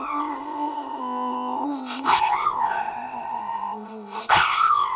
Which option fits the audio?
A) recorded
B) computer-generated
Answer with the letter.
B